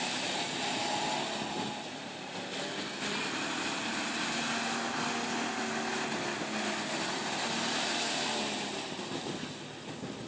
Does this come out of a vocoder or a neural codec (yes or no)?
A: no